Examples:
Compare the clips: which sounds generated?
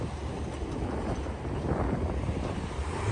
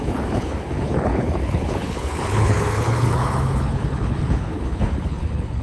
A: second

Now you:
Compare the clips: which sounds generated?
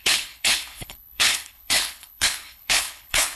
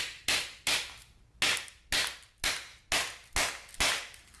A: first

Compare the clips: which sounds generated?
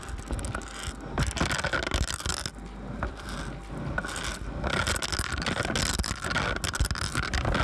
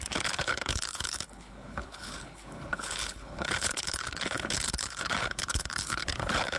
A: second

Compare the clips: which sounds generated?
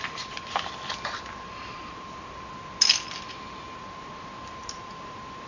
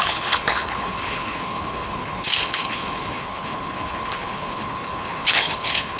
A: second